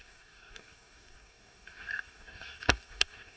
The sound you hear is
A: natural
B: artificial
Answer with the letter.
B